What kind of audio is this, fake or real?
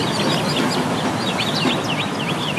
real